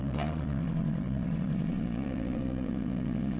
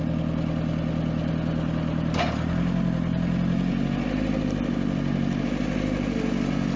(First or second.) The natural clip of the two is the second